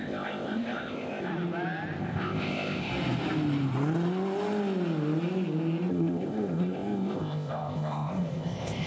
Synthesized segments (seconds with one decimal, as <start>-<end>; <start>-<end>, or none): 0.0-1.3; 2.0-2.9; 5.9-8.9